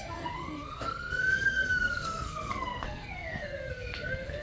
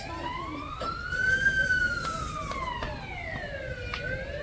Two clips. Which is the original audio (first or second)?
second